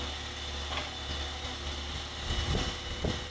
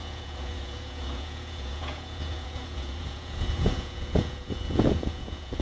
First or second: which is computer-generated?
second